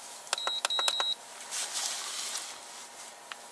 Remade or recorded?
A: recorded